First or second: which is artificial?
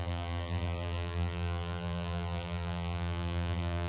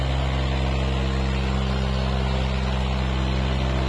first